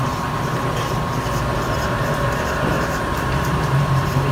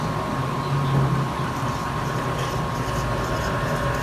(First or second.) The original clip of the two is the second